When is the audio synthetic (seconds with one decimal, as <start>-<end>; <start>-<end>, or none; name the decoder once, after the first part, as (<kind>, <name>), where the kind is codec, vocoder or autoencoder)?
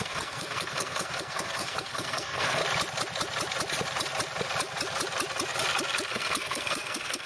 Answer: 0.0-2.6 (codec, SNAC); 6.1-7.3